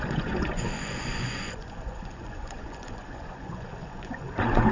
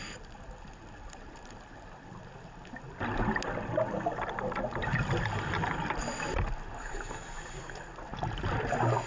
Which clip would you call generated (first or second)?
first